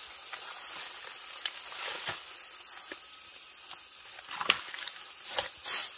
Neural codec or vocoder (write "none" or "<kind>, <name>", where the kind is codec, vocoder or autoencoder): none